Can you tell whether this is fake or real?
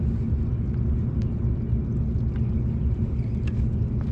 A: real